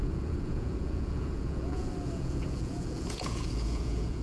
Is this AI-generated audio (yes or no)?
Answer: yes